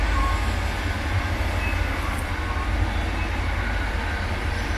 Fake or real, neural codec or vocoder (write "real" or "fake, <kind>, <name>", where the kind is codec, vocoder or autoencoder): real